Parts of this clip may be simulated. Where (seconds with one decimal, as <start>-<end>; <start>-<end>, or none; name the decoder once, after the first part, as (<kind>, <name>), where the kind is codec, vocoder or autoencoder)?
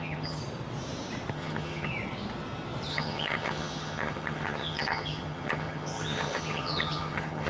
0.0-0.4 (vocoder, HiFi-GAN); 1.3-1.9; 2.9-7.5